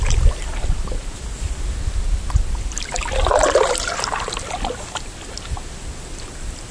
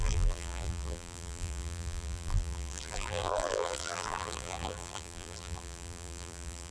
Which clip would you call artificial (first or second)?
second